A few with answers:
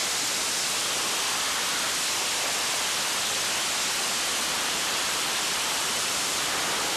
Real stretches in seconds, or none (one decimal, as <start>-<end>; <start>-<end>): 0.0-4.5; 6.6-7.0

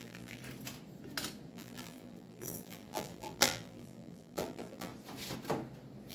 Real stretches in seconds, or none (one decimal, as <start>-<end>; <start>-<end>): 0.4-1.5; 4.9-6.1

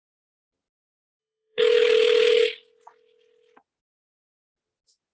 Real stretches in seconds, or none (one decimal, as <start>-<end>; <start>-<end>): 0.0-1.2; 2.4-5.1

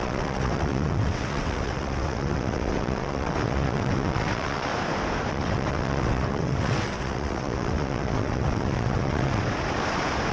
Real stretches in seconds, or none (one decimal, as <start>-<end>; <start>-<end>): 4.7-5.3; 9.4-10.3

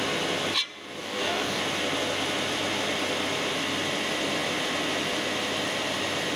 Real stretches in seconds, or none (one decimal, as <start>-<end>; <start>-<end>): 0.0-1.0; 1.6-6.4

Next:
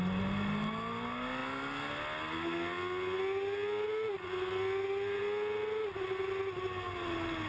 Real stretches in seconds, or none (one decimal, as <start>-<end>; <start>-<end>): 0.0-7.5

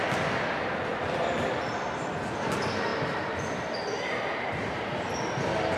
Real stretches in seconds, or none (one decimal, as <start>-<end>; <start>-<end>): 0.0-2.9; 4.6-5.8